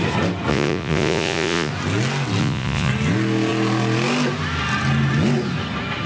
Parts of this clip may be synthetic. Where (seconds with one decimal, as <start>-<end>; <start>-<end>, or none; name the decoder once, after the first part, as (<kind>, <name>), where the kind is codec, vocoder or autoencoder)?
0.5-1.7 (vocoder, Vocos); 2.4-2.9